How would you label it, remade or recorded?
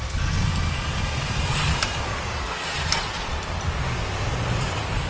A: recorded